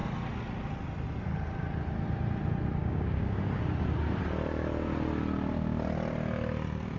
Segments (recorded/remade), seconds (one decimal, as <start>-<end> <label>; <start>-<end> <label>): 0.0-2.8 recorded; 2.8-3.4 remade; 3.4-7.0 recorded